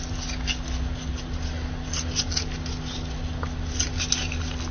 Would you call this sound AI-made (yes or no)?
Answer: no